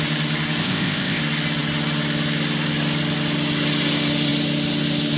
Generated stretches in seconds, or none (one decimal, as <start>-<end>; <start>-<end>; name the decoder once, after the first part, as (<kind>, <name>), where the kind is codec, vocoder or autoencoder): 0.6-1.2 (codec, ZipCodec)